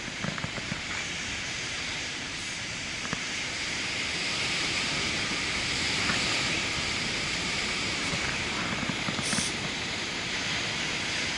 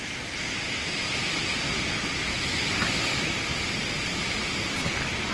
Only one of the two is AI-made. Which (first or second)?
first